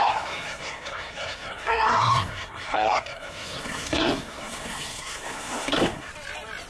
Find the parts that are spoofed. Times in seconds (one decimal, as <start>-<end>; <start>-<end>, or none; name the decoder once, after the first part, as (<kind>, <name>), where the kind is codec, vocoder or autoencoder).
0.0-6.1 (codec, SNAC)